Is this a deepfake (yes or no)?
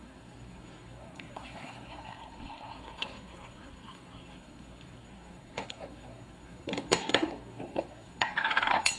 yes